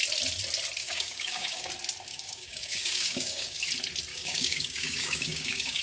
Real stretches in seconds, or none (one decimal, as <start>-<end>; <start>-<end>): 0.0-0.8; 1.7-2.1; 3.6-4.1